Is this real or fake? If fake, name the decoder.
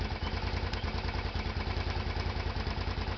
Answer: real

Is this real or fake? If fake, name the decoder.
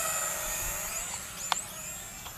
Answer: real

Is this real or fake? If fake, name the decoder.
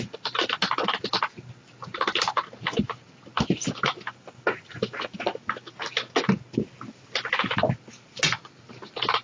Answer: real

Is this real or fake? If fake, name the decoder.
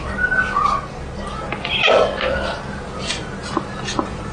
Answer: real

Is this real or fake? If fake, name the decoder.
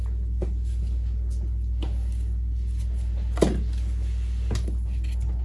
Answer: real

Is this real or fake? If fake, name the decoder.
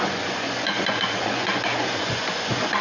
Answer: fake, vocoder, Vocos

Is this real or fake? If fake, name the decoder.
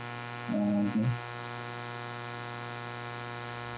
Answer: real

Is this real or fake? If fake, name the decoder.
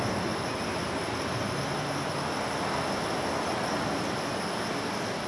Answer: real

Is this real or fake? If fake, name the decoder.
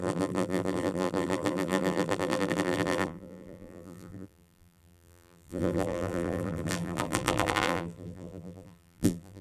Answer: fake, vocoder, BigVGAN v2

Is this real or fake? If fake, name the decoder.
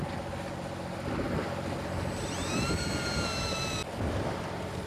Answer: real